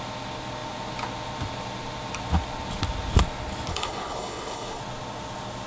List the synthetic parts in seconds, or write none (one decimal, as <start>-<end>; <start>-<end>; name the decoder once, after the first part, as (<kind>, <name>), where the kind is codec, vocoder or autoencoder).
3.7-4.8 (codec, HILCodec)